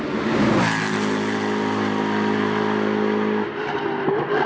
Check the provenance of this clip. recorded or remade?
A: recorded